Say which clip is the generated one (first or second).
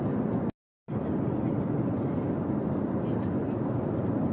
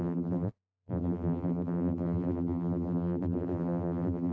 second